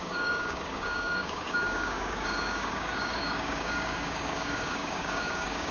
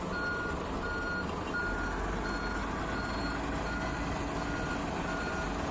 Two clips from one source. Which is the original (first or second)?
second